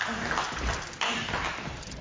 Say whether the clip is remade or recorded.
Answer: recorded